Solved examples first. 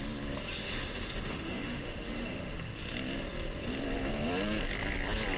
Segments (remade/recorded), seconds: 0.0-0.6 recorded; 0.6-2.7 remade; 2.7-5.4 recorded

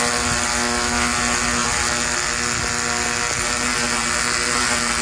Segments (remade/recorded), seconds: 0.0-5.0 recorded

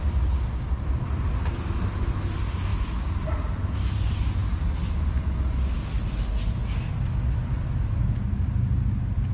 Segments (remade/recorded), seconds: 0.0-9.3 recorded

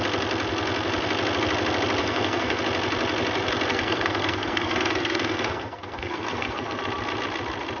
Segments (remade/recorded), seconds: 0.0-2.0 recorded; 2.0-2.6 remade; 2.6-3.7 recorded; 3.7-6.8 remade; 6.8-7.8 recorded

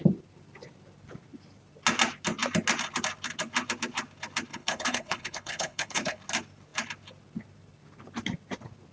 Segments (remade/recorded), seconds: 0.0-4.5 recorded; 4.5-6.2 remade; 6.2-8.9 recorded

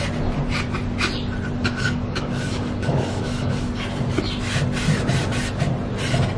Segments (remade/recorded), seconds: 0.0-1.6 recorded; 1.6-3.7 remade; 3.7-6.4 recorded

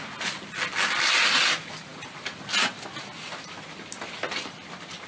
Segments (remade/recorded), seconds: 0.0-5.1 recorded

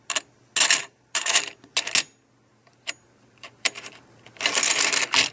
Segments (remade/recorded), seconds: 0.0-0.8 recorded; 0.8-1.3 remade; 1.3-2.5 recorded; 2.5-4.5 remade; 4.5-5.3 recorded